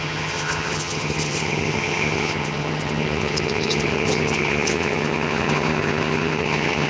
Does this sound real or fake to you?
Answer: fake